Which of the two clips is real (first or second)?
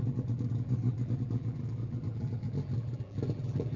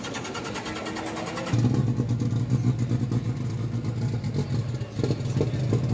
second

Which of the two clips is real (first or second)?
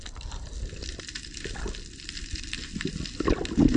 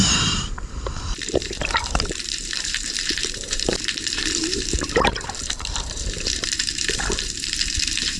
first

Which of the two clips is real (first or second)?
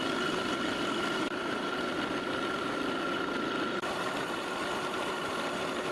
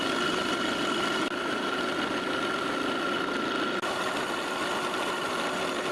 second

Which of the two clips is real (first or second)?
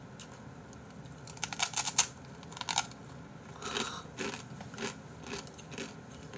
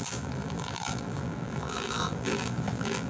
first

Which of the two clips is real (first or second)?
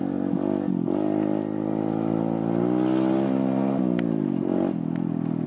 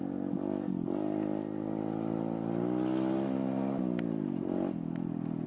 first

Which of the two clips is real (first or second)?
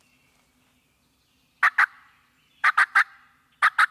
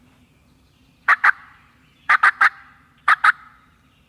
first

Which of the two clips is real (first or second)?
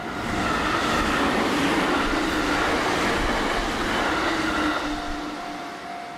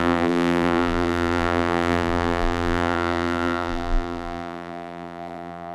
first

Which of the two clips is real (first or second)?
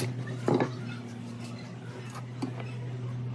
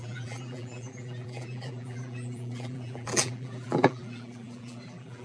first